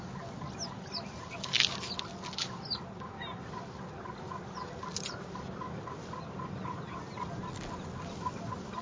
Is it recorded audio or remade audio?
recorded